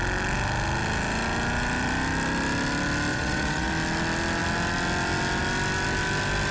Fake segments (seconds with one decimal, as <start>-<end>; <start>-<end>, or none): 3.1-3.7